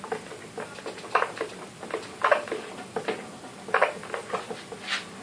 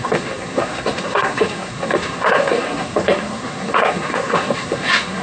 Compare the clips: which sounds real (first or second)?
first